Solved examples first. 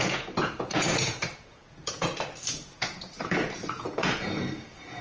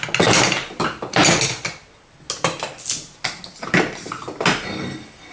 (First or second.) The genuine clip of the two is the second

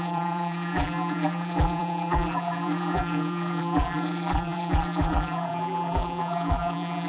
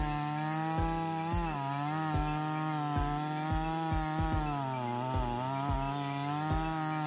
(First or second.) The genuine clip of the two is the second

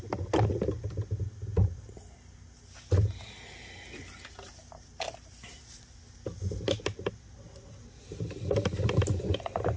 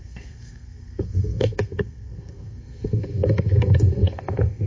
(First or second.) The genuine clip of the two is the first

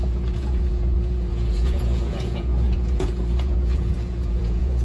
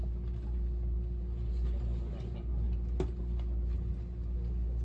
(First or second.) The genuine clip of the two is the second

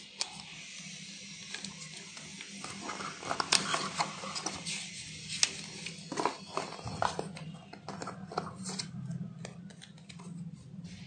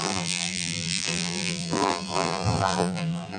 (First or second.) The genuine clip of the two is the first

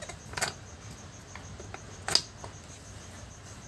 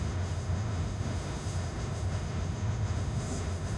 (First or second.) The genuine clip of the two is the first